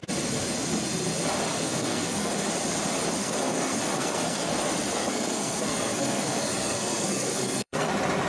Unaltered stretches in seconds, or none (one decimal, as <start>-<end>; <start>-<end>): 0.0-1.5; 2.5-3.2; 4.5-5.0; 7.9-8.3